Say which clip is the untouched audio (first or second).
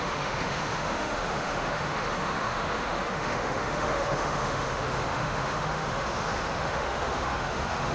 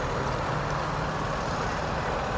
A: second